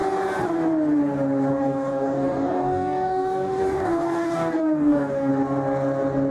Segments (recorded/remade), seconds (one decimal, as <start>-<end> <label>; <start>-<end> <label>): 0.0-1.5 recorded; 1.5-5.3 remade; 5.3-6.3 recorded